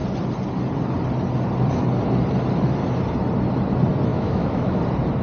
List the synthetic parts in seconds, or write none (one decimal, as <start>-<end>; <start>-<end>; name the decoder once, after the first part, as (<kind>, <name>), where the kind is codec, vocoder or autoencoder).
4.1-4.8 (autoencoder, DAC-VAE)